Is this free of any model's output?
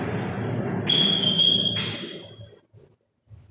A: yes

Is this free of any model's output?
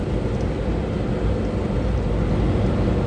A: yes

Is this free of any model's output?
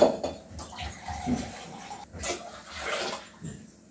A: yes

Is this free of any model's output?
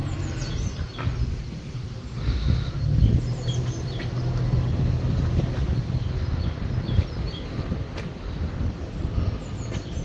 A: yes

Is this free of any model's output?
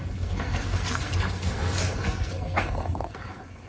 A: no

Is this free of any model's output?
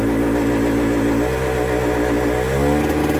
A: yes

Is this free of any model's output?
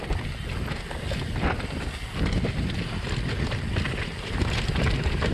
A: yes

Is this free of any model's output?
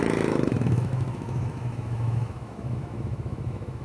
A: no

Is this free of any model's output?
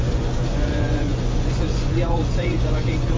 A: no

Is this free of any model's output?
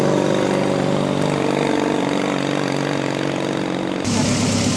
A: yes